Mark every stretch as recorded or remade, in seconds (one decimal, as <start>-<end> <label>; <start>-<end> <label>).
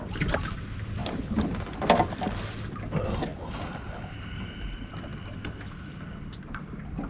0.0-7.1 recorded